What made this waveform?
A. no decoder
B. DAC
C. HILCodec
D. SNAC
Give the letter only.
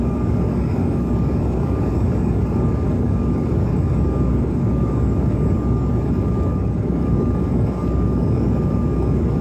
B